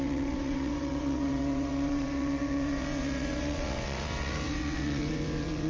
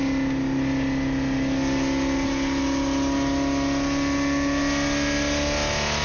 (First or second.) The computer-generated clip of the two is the first